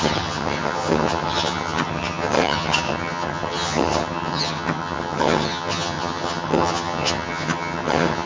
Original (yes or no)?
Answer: no